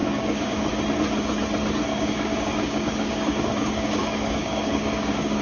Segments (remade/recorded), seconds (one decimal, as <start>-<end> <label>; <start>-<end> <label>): 0.0-0.6 remade; 0.6-1.9 recorded; 1.9-5.4 remade